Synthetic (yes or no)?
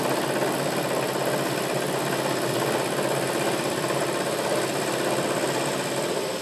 no